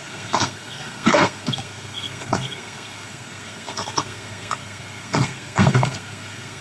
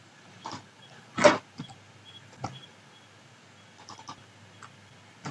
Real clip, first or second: second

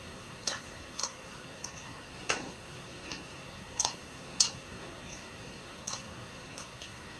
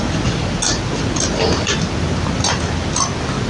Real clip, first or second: second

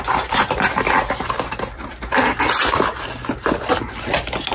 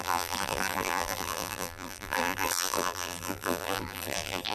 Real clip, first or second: first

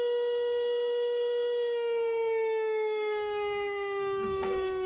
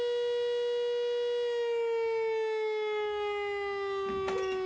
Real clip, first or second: second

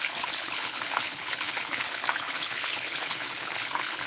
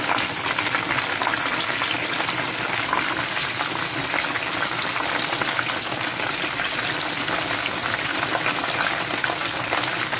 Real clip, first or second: second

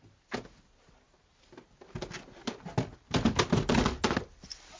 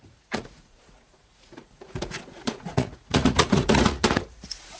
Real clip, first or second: first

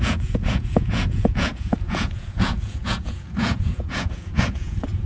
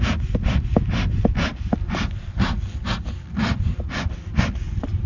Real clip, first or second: second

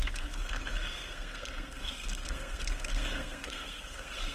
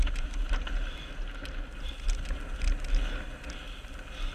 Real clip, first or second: second